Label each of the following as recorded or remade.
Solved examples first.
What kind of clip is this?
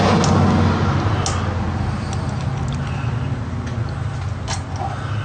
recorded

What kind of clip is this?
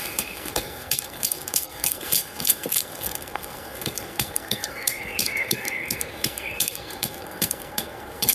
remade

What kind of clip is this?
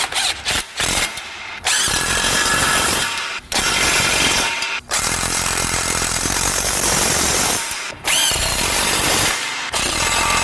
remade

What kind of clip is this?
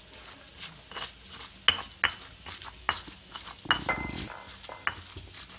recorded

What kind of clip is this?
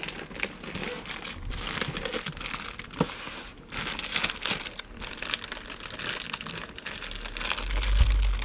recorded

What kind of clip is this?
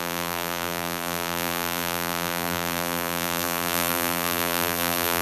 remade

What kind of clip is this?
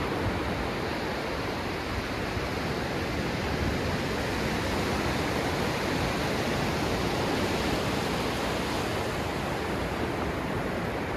recorded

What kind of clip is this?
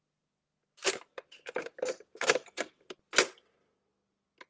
recorded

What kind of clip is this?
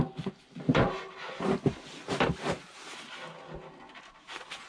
recorded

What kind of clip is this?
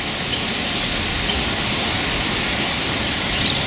recorded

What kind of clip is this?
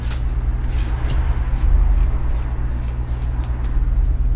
recorded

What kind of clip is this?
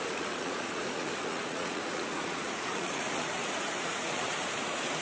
remade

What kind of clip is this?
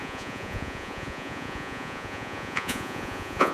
remade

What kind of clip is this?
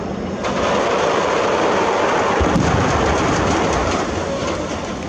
recorded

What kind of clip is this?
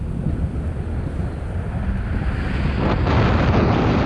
recorded